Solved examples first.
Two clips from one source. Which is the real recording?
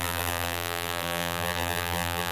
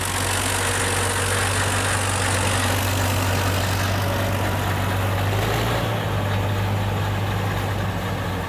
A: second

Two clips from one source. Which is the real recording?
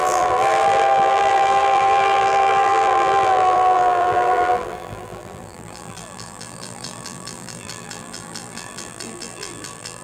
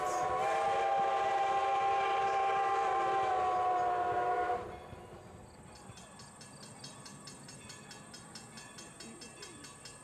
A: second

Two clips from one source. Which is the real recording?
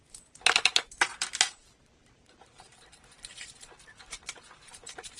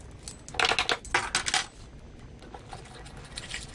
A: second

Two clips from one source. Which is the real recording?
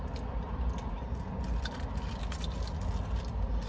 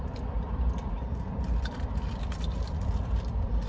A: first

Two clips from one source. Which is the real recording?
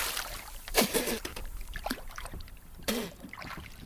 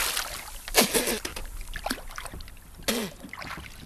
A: second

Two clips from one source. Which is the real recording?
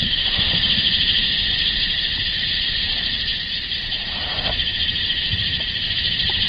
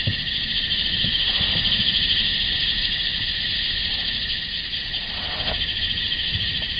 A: second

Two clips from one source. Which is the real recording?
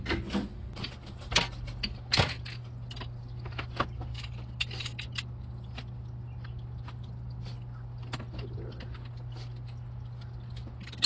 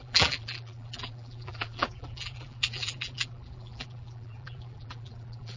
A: first